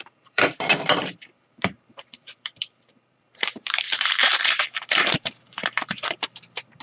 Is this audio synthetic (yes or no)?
yes